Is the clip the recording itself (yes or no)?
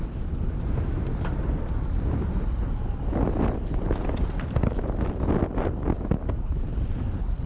yes